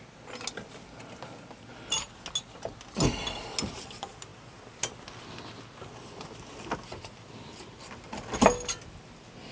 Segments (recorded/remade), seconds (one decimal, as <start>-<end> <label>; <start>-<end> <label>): 0.0-9.5 recorded

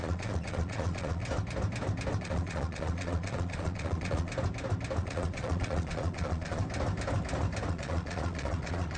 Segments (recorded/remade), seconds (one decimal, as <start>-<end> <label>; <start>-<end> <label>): 0.0-1.2 remade; 1.2-2.2 recorded; 2.2-4.3 remade; 4.3-5.0 recorded; 5.0-6.6 remade; 6.6-7.7 recorded; 7.7-9.0 remade

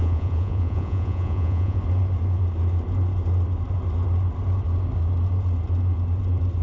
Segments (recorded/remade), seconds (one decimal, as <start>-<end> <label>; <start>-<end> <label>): 0.0-1.8 remade; 1.8-6.6 recorded

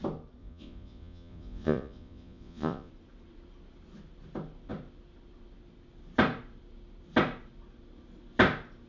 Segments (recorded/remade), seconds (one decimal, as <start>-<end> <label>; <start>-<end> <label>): 0.0-0.4 recorded; 0.4-2.9 remade; 2.9-8.9 recorded

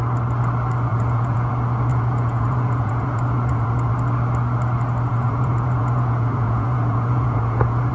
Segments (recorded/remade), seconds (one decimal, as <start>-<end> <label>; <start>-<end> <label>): 0.0-0.9 recorded; 0.9-1.5 remade; 1.5-1.9 recorded; 1.9-3.9 remade; 3.9-5.1 recorded; 5.1-7.9 remade

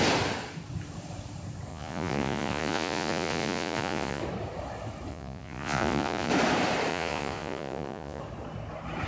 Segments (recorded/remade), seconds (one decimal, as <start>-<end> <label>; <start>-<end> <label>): 0.0-1.7 recorded; 1.7-4.2 remade; 4.2-5.1 recorded; 5.1-6.3 remade; 6.3-6.9 recorded; 6.9-8.2 remade; 8.2-9.1 recorded

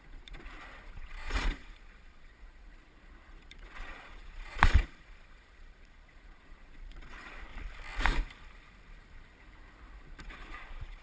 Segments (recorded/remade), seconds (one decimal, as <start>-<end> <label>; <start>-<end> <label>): 0.0-7.5 remade; 7.5-10.2 recorded; 10.2-11.0 remade